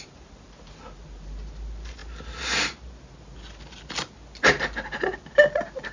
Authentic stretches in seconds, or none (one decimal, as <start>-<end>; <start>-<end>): 0.0-5.9